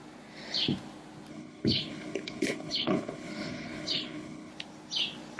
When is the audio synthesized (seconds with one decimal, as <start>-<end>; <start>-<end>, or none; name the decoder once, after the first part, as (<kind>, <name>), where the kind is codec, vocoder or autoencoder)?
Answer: 1.3-4.5 (codec, HILCodec)